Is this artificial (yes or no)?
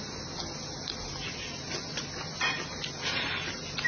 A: no